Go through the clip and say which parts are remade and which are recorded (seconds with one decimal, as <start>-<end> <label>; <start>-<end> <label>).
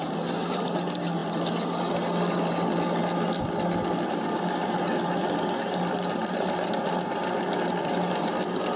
0.0-8.8 recorded